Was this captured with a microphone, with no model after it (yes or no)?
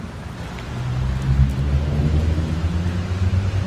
yes